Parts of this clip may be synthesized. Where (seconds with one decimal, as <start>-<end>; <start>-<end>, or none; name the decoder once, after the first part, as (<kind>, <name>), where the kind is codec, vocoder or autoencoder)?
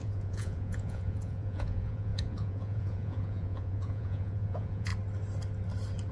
0.0-4.9 (vocoder, Vocos)